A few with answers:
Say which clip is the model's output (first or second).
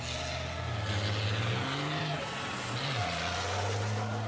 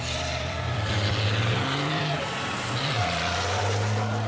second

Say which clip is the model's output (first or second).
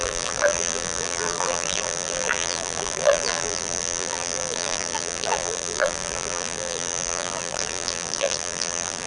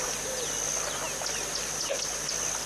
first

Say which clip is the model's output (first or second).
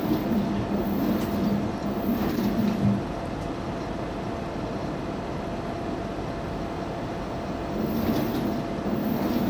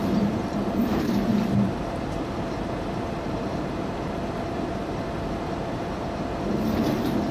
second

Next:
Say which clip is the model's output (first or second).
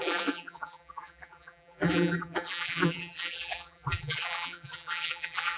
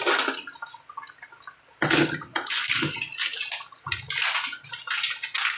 first